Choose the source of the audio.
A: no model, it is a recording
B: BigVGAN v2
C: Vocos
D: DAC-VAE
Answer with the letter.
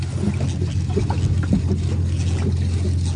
A